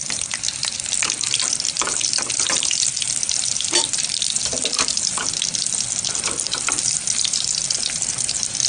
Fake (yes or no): yes